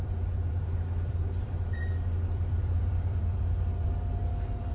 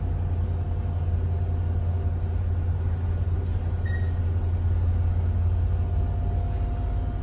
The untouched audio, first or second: second